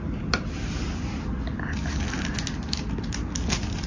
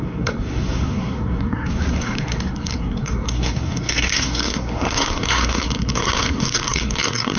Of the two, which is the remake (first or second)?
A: second